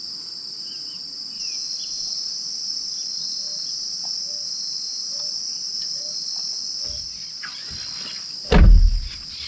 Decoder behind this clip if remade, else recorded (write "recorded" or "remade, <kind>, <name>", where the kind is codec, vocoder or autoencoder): recorded